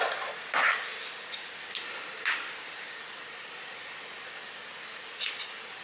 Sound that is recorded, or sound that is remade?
recorded